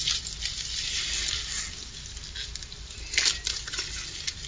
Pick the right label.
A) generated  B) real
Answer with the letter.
B